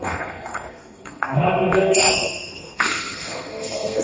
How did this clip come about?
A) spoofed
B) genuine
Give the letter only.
A